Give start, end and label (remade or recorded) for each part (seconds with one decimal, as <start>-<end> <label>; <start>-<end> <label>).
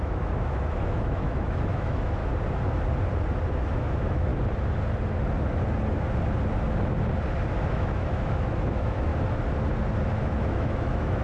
0.0-2.2 remade; 2.2-3.6 recorded; 3.6-4.3 remade; 4.3-7.7 recorded; 7.7-9.1 remade; 9.1-10.2 recorded; 10.2-11.2 remade